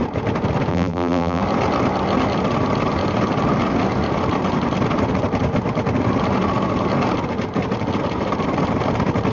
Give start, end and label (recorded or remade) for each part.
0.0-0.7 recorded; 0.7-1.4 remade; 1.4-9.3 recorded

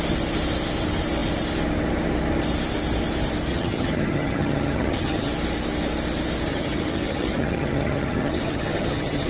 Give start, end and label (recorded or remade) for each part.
0.0-3.5 recorded; 3.5-5.3 remade; 5.3-6.5 recorded; 6.5-9.3 remade

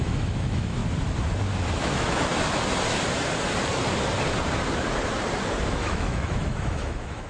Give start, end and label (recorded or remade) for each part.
0.0-0.8 remade; 0.8-1.7 recorded; 1.7-2.3 remade; 2.3-5.7 recorded; 5.7-7.3 remade

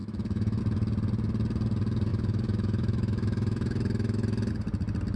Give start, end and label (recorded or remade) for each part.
0.0-0.6 remade; 0.6-2.1 recorded; 2.1-4.5 remade; 4.5-5.2 recorded

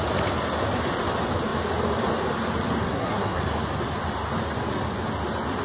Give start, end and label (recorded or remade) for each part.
0.0-2.8 recorded; 2.8-3.4 remade; 3.4-5.6 recorded

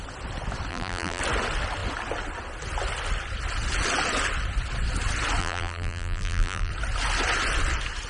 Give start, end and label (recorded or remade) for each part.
0.0-0.7 recorded; 0.7-1.2 remade; 1.2-5.4 recorded; 5.4-6.7 remade; 6.7-8.1 recorded

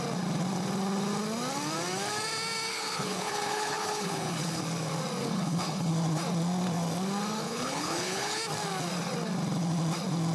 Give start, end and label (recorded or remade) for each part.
0.0-2.7 recorded; 2.7-4.6 remade; 4.6-5.2 recorded; 5.2-5.9 remade; 5.9-7.4 recorded; 7.4-8.4 remade; 8.4-10.3 recorded

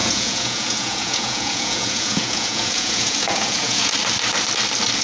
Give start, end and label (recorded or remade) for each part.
0.0-3.9 remade; 3.9-5.0 recorded